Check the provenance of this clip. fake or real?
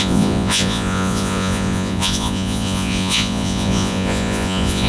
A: fake